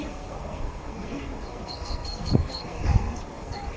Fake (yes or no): yes